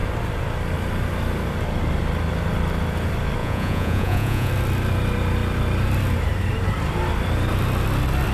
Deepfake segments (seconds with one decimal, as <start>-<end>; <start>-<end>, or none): 3.4-4.5